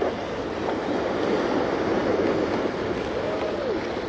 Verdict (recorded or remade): recorded